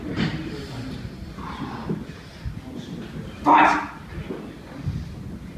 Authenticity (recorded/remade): recorded